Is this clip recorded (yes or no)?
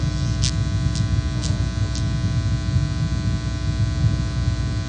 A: yes